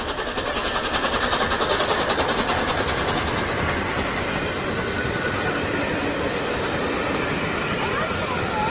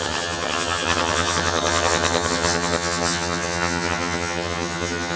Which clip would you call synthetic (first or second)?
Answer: second